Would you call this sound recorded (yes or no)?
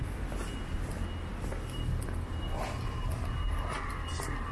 yes